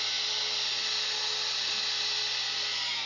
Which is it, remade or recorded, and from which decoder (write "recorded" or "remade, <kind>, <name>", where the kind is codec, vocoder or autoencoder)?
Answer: recorded